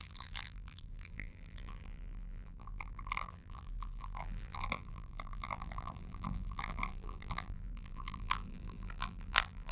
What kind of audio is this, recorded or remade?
remade